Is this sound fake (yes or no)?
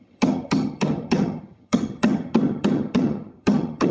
yes